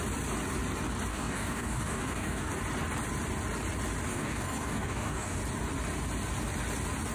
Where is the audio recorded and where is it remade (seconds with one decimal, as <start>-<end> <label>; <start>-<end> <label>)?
0.0-1.1 recorded; 1.1-2.5 remade; 2.5-4.1 recorded; 4.1-5.4 remade; 5.4-7.1 recorded